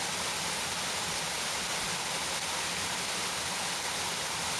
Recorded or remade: recorded